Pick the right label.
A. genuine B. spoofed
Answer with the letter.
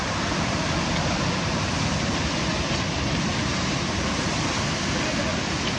A